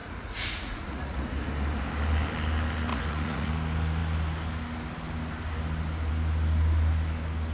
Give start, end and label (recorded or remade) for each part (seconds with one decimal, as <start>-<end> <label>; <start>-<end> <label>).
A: 0.0-1.2 remade; 1.2-2.9 recorded; 2.9-3.5 remade; 3.5-7.5 recorded